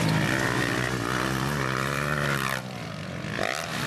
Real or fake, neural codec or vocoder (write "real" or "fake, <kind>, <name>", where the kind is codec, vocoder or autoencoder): real